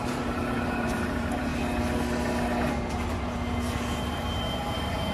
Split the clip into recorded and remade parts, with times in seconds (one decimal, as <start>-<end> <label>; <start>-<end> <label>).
0.0-1.5 remade; 1.5-4.0 recorded; 4.0-5.1 remade